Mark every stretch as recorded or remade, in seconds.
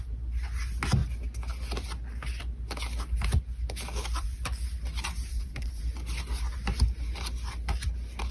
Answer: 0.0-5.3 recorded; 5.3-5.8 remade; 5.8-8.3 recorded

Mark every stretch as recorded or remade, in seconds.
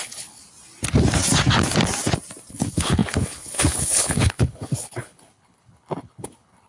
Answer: 0.0-0.4 remade; 0.4-2.5 recorded; 2.5-6.7 remade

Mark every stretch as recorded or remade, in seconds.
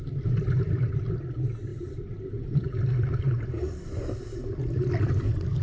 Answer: 0.0-5.6 recorded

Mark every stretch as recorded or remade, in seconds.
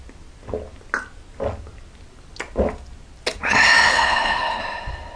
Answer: 0.0-3.9 recorded; 3.9-4.6 remade; 4.6-5.2 recorded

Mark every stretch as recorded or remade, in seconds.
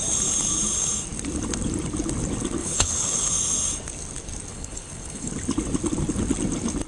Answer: 0.0-2.6 recorded; 2.6-3.3 remade; 3.3-4.5 recorded; 4.5-5.3 remade; 5.3-6.9 recorded